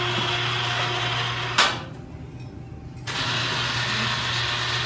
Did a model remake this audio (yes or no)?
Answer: no